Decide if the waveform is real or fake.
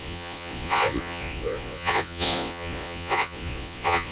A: fake